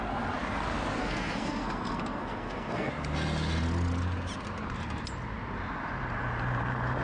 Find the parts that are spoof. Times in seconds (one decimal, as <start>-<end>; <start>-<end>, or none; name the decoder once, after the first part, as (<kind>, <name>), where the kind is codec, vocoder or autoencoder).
1.0-2.9 (codec, SNAC)